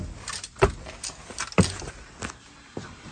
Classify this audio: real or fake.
real